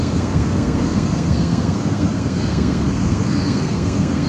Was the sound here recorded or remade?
remade